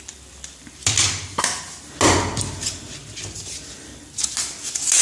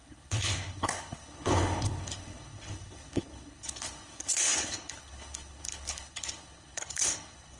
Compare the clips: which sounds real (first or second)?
first